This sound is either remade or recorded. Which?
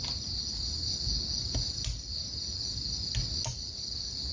recorded